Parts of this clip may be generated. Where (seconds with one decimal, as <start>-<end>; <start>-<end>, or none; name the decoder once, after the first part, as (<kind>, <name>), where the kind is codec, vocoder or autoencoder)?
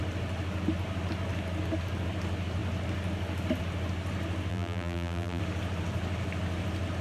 4.5-5.4 (vocoder, BigVGAN v2)